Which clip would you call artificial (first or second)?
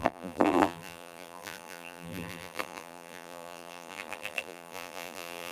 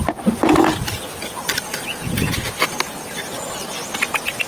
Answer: first